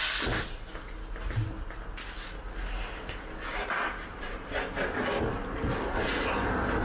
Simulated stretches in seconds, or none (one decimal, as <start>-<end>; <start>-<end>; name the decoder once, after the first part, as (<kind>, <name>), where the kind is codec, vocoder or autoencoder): none